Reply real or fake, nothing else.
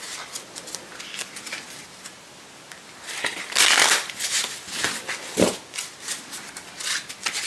real